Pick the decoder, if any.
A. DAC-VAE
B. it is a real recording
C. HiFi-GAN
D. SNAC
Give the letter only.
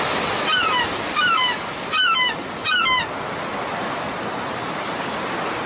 B